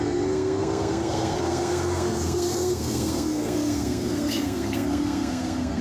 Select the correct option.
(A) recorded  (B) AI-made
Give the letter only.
B